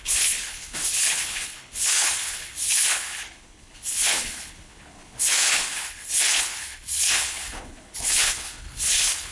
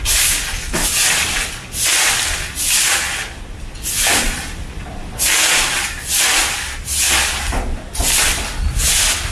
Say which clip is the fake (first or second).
first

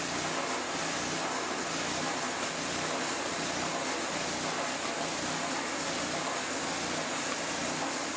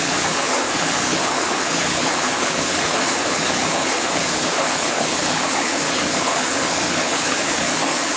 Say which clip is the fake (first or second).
second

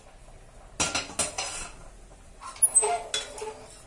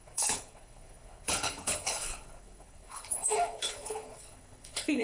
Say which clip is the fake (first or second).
second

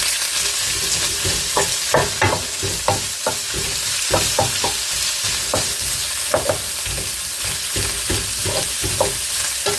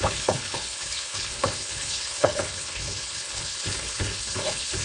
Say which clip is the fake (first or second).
second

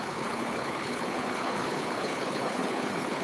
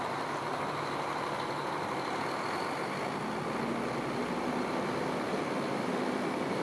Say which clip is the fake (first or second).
first